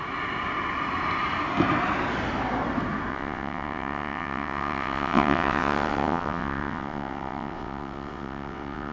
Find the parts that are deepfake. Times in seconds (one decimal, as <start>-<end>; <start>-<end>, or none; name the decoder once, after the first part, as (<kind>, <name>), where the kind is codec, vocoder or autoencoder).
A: 3.1-8.9 (vocoder, WaveNeXt)